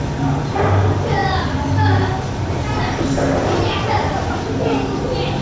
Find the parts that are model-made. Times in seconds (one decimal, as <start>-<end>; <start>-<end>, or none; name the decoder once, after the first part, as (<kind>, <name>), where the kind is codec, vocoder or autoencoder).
none